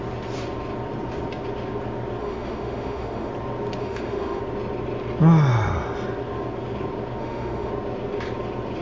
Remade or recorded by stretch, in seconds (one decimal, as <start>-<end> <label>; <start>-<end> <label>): 0.0-2.2 recorded; 2.2-3.3 remade; 3.3-3.8 recorded; 3.8-4.4 remade; 4.4-7.2 recorded; 7.2-7.7 remade; 7.7-8.8 recorded